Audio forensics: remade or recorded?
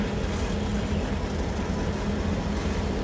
recorded